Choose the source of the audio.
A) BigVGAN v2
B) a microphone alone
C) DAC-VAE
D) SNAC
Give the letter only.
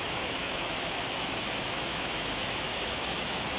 C